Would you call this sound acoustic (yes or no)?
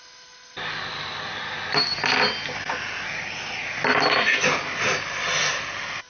yes